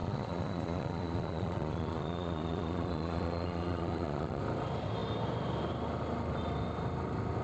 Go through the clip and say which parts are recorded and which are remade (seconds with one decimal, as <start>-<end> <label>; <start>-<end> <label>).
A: 0.0-4.4 remade; 4.4-7.4 recorded